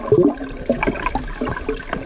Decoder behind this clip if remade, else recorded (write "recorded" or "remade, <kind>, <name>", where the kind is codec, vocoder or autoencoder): recorded